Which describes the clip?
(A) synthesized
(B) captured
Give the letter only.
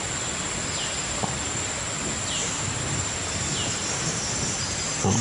B